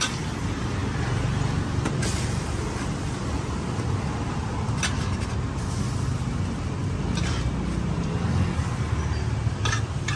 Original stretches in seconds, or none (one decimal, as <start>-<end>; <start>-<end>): 0.0-10.2